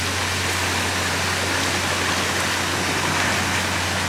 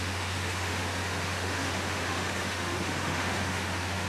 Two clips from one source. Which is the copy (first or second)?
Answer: second